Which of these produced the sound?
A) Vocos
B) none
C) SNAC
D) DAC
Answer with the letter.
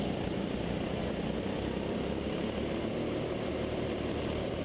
B